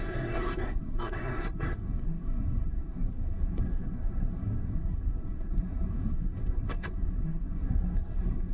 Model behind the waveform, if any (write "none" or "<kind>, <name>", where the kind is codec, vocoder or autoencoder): codec, SNAC